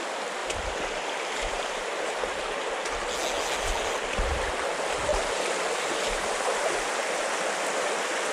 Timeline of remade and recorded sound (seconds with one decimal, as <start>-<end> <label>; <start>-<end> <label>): 0.0-0.4 recorded; 0.4-2.7 remade; 2.7-5.1 recorded; 5.1-5.6 remade; 5.6-8.3 recorded